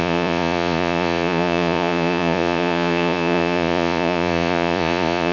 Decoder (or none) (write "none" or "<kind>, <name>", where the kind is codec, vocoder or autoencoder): vocoder, Vocos